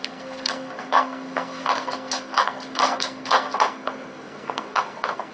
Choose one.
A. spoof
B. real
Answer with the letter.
A